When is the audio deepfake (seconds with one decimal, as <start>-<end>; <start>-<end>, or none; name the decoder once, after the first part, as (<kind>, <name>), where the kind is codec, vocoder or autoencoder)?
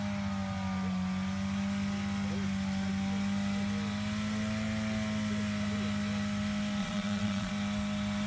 6.8-7.5 (vocoder, Vocos)